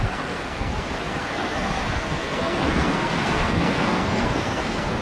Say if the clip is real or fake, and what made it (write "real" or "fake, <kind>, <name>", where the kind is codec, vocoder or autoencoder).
fake, codec, SNAC